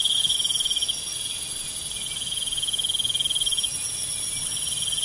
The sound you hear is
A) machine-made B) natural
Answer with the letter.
B